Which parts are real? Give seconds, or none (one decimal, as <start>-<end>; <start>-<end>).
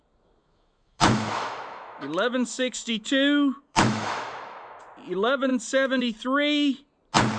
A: 0.0-0.4; 4.8-7.4